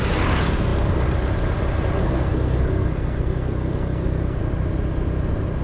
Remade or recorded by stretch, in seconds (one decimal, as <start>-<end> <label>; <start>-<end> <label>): 0.0-2.0 recorded; 2.0-4.4 remade; 4.4-5.6 recorded